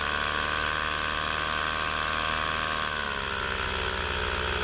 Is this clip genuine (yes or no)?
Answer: yes